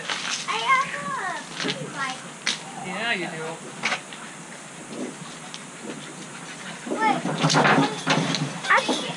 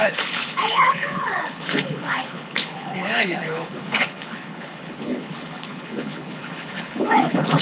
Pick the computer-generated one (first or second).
second